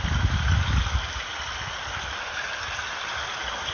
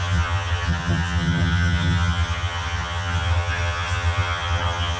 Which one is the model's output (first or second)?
second